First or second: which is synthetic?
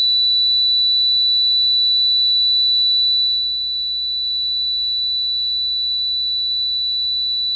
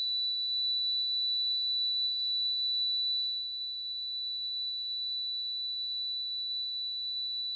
second